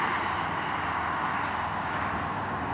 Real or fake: real